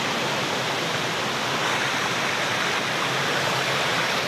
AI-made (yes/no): no